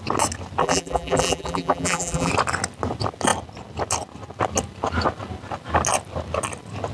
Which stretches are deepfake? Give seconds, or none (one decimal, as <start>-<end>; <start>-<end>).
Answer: 0.6-2.3